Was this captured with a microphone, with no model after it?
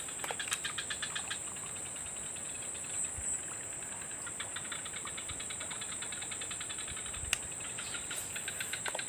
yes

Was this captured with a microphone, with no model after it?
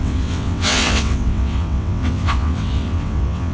no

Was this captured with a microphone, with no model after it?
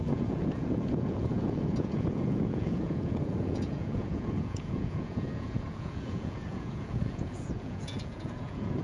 no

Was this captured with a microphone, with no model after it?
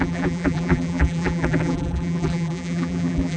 no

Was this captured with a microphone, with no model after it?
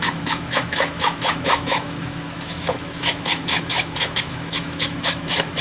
no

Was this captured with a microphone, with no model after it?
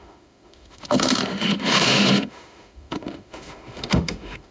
no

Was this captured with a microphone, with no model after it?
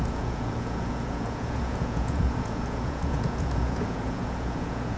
no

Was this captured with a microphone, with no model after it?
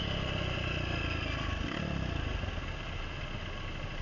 yes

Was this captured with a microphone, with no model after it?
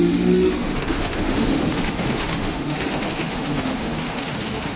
no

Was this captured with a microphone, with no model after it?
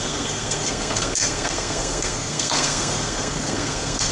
no